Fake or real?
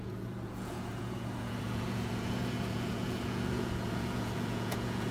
fake